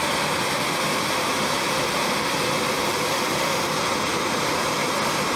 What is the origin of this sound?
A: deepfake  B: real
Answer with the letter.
B